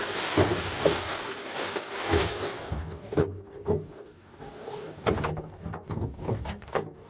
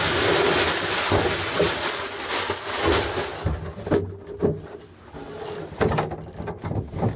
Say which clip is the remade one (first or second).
first